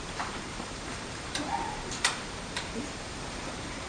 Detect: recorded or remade remade